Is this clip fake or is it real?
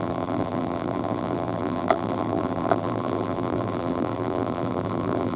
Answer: fake